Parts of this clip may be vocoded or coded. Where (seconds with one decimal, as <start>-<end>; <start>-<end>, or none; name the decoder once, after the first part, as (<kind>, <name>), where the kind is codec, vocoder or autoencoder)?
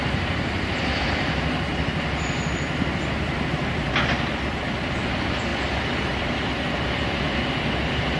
0.0-1.7 (vocoder, BigVGAN v2); 2.5-8.2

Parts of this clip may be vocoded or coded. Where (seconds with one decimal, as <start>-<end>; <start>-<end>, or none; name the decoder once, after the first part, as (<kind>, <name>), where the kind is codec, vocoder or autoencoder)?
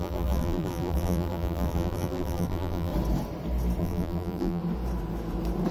0.0-2.9 (vocoder, BigVGAN v2); 3.8-4.6